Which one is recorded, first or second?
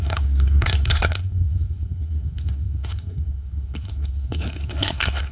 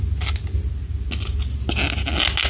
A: second